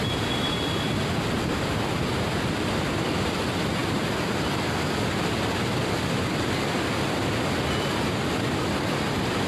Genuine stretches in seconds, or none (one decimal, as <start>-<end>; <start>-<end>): 0.0-9.5